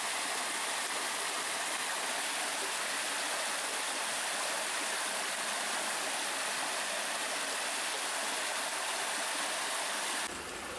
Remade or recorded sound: recorded